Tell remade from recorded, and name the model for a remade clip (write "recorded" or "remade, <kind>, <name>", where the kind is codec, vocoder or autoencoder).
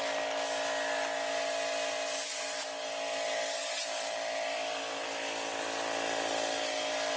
recorded